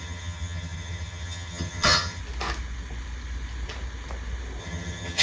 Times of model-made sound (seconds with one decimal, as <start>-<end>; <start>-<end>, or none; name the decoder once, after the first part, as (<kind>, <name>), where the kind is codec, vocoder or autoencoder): 0.0-2.2 (vocoder, HiFi-GAN); 4.6-5.2